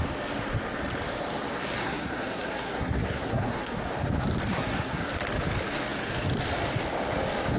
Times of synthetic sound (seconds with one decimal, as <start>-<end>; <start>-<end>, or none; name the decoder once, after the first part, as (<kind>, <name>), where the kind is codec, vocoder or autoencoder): 1.8-3.8 (codec, SNAC); 4.5-5.1